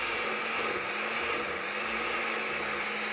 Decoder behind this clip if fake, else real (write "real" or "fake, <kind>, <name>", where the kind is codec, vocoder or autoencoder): real